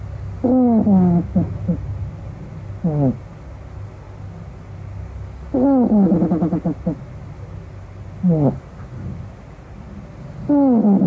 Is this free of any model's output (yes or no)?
yes